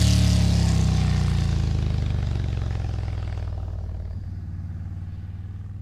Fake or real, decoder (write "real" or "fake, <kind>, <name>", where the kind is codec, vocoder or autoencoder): real